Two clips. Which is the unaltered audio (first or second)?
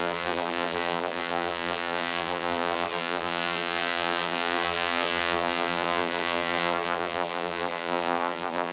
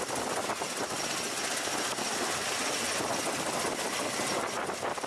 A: second